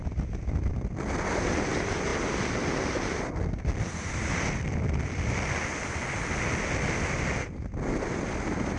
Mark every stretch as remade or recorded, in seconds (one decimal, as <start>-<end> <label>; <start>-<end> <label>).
0.0-8.8 recorded